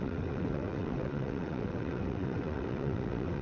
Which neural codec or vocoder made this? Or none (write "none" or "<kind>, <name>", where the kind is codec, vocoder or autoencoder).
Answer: vocoder, WaveNeXt